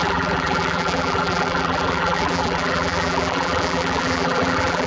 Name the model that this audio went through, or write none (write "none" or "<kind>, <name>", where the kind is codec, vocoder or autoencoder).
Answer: vocoder, BigVGAN v2